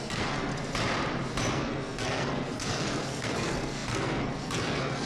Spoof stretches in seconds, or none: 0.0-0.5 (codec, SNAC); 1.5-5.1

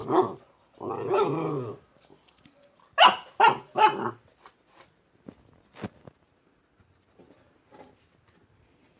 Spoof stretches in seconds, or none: none

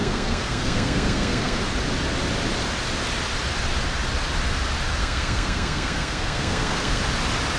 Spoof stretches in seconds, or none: 0.0-1.6 (codec, SNAC); 5.0-7.0

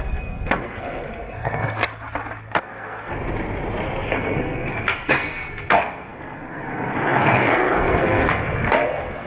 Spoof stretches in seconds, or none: 0.0-1.8 (codec, SNAC); 2.5-3.1; 4.1-9.3

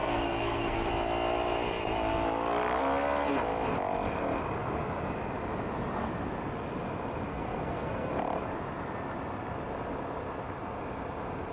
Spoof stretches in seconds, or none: 0.0-0.9 (codec, SNAC); 7.3-8.1

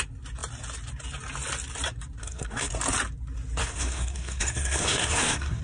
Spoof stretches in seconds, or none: 2.2-2.7 (codec, SNAC); 3.6-5.6

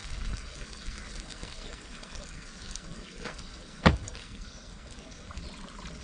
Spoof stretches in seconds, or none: 0.0-5.4 (codec, SNAC)